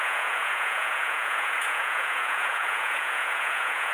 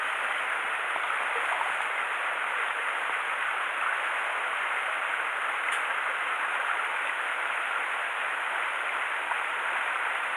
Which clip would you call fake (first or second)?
first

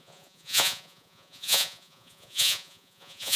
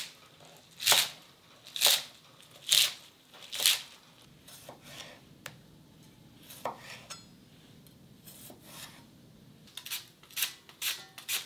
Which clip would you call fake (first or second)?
first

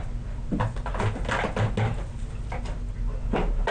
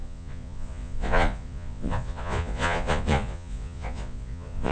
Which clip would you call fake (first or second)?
second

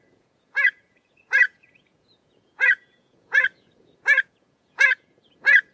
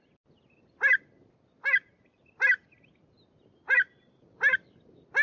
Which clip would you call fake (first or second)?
first